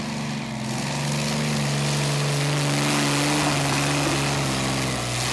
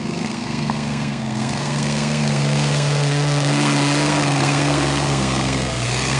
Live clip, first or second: first